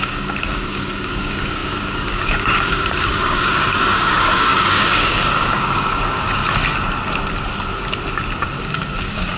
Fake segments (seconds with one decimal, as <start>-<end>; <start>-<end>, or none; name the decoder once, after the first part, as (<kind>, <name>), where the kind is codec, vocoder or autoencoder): 0.0-6.4 (codec, DAC); 8.6-9.4